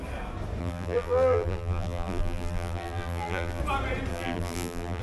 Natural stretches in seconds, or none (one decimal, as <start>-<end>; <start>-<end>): 0.0-0.6; 3.6-4.1